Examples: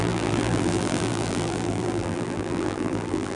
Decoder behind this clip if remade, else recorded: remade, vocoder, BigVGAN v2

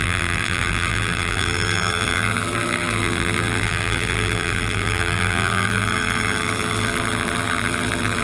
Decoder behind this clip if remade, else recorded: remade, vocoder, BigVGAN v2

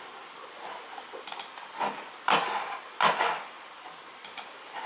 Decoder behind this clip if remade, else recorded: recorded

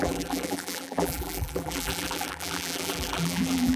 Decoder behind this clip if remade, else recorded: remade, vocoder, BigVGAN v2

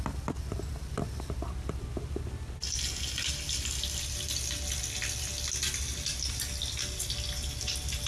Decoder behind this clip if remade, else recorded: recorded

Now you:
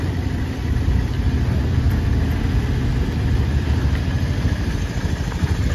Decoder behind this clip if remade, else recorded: recorded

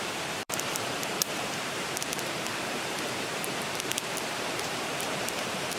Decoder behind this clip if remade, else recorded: remade, vocoder, BigVGAN v2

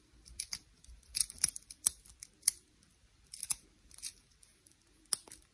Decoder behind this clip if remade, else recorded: remade, vocoder, BigVGAN v2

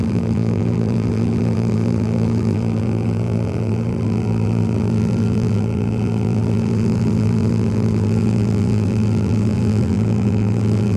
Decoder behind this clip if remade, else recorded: remade, vocoder, BigVGAN v2